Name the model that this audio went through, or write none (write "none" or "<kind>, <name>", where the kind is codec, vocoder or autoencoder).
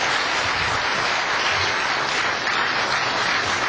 none